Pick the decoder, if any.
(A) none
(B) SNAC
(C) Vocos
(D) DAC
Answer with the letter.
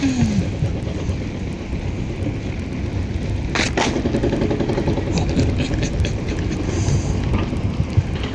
A